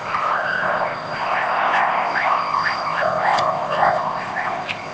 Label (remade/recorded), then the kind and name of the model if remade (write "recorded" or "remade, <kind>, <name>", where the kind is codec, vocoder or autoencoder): remade, codec, ZipCodec